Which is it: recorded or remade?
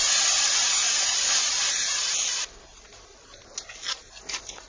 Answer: recorded